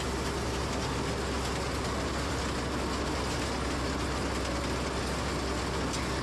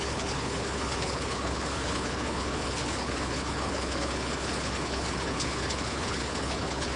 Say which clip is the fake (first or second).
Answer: second